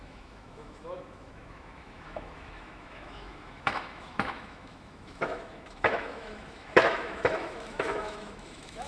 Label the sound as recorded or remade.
remade